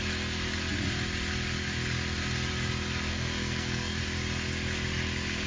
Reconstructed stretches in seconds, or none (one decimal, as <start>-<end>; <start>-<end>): 3.1-4.0

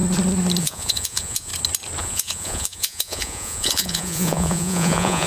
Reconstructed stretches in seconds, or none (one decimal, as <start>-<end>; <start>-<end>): 0.6-1.5; 2.0-5.3

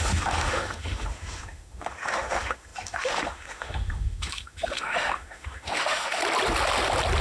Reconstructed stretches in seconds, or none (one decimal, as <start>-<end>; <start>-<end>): 0.0-6.2

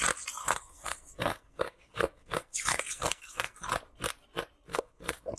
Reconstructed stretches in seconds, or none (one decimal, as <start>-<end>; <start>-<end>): 0.4-3.6; 4.7-5.4

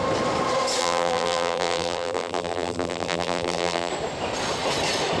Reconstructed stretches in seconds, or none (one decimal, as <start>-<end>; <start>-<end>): 0.8-3.9

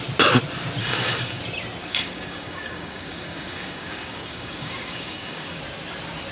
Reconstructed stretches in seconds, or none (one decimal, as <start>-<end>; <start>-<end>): 0.8-1.4; 1.8-5.6

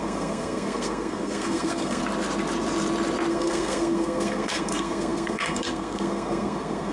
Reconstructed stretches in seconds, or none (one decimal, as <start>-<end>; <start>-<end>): 0.0-2.0; 3.3-6.9

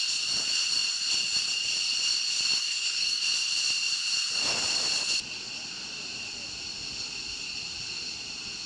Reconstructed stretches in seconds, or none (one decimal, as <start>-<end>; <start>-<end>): 2.6-3.2